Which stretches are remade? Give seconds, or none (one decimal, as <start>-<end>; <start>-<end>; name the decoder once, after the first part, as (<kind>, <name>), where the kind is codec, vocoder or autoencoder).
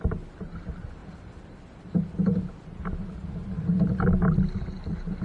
1.0-4.1 (vocoder, BigVGAN v2)